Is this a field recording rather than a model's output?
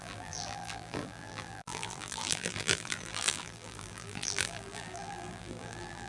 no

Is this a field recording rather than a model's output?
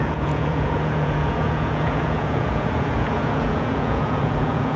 no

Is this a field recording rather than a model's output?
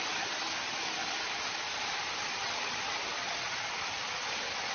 yes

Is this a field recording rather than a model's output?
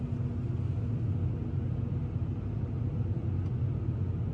yes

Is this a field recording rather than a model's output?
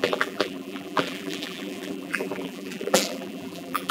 no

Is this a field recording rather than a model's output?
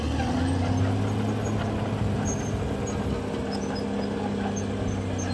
yes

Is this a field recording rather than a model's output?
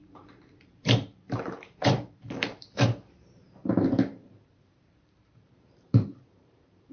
no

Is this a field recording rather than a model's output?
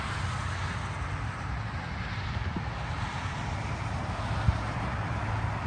yes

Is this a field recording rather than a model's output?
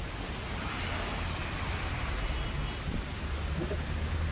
yes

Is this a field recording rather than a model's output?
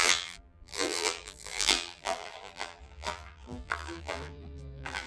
no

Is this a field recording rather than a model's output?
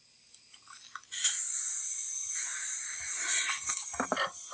yes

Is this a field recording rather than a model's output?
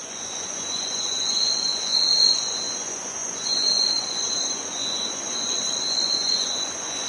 no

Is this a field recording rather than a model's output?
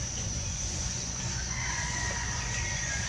no